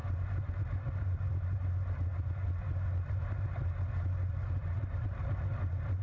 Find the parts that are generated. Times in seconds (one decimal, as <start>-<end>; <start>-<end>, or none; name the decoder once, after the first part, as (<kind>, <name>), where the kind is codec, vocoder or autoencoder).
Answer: none